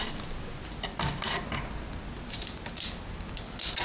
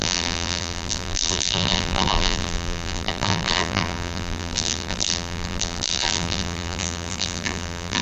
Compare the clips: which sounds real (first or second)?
first